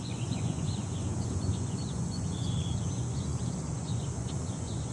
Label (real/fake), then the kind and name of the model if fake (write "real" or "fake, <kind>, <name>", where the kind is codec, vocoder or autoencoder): fake, vocoder, Vocos